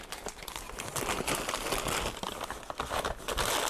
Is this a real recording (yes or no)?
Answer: yes